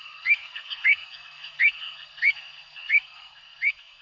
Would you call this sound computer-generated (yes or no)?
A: yes